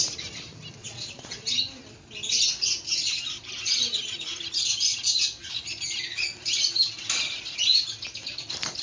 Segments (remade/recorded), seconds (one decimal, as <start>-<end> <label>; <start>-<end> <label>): 0.0-0.8 recorded; 0.8-1.4 remade; 1.4-8.8 recorded